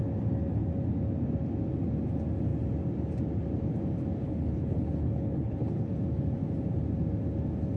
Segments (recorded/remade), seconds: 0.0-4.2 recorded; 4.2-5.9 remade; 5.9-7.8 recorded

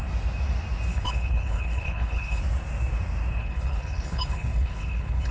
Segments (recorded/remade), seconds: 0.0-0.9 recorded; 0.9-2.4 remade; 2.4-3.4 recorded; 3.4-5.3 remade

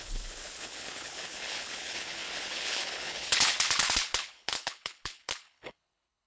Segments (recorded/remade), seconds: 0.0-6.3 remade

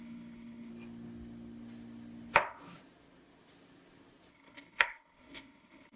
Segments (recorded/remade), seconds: 0.0-0.7 remade; 0.7-4.3 recorded; 4.3-6.0 remade

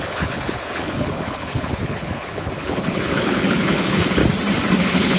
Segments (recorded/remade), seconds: 0.0-4.2 remade; 4.2-4.8 recorded; 4.8-5.2 remade